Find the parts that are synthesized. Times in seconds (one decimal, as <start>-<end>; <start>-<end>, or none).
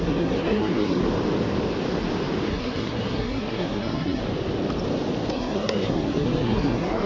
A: 0.0-1.0; 2.5-4.2; 5.3-7.1